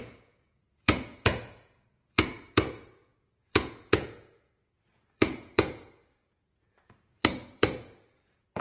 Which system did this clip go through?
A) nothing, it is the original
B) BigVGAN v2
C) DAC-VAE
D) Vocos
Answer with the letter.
D